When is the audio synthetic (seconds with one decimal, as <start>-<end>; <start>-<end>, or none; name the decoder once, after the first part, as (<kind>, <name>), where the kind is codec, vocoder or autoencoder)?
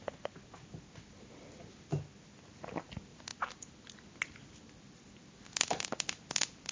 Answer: none